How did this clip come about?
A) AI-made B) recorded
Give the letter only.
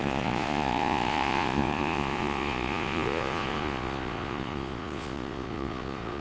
A